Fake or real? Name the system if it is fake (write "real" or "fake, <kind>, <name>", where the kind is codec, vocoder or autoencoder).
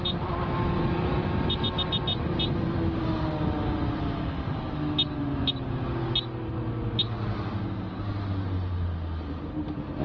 real